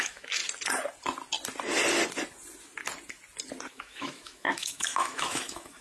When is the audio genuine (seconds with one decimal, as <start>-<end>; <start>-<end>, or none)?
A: 0.4-3.7

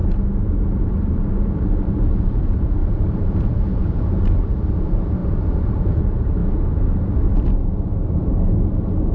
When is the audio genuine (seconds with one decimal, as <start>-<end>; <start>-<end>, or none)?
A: 0.0-0.8; 6.4-9.1

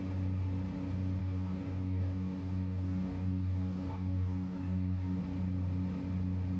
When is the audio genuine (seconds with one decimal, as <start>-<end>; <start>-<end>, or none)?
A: 0.0-1.2; 5.2-6.6

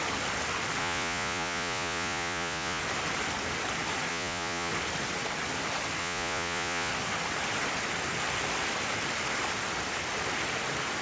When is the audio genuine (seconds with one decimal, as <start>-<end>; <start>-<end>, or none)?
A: 0.0-0.8; 2.8-4.1; 4.7-6.0; 6.9-11.0

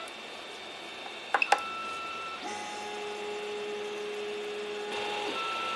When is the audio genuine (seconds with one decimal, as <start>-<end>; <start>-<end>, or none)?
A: 0.0-1.8; 2.3-5.8

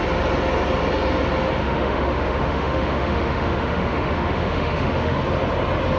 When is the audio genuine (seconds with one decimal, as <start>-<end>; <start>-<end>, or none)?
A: 0.0-1.6; 5.2-6.0